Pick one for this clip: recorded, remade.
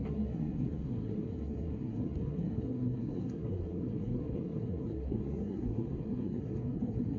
remade